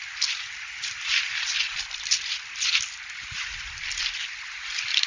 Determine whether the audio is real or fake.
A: real